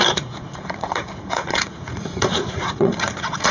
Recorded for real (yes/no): no